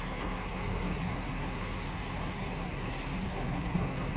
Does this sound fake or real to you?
fake